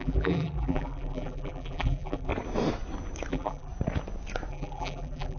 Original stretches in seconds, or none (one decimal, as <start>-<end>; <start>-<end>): 2.3-3.3; 3.7-4.5